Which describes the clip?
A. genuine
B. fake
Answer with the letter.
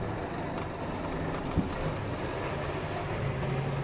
A